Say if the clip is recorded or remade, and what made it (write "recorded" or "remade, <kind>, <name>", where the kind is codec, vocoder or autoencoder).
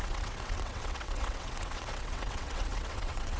remade, vocoder, WaveNeXt